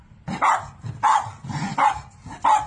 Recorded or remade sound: recorded